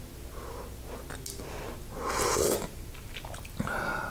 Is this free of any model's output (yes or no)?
yes